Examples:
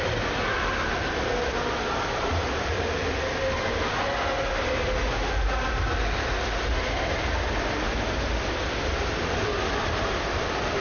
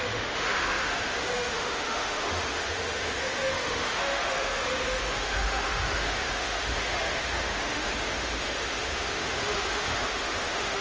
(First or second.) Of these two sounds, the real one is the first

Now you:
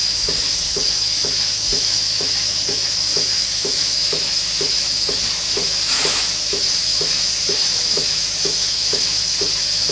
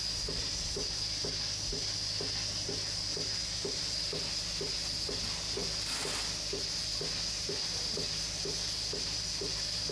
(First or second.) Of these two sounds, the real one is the second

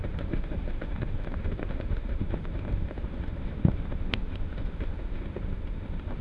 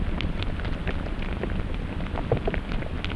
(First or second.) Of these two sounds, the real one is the second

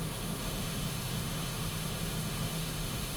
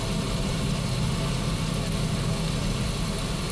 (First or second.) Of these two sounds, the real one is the second